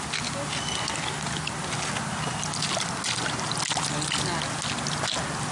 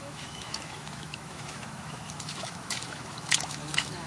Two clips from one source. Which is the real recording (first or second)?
first